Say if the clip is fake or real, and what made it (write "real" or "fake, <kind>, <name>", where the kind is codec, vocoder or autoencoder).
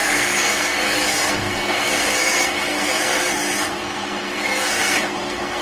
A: fake, codec, SNAC